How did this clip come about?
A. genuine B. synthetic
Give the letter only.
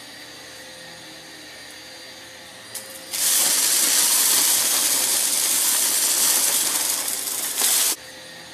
A